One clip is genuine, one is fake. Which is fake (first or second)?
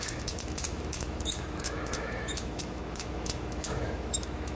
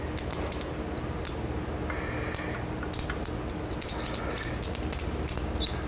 first